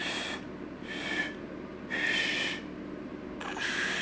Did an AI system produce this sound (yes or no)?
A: no